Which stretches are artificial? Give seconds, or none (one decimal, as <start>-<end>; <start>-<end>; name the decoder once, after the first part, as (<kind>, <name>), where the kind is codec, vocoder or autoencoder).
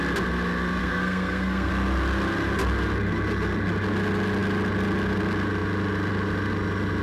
0.8-1.7 (codec, SNAC)